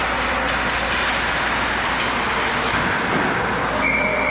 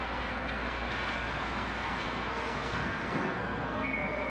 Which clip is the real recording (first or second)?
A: first